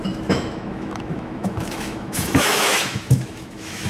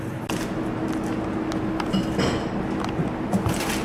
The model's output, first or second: first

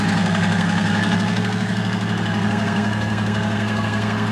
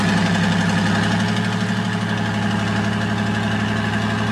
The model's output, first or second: first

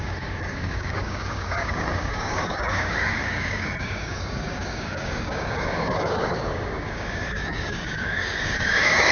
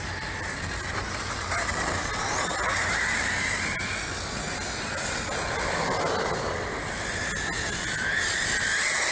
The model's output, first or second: first